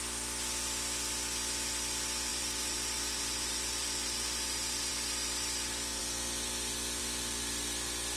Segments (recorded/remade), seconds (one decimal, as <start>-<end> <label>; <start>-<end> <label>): 0.0-2.3 recorded; 2.3-4.9 remade; 4.9-8.2 recorded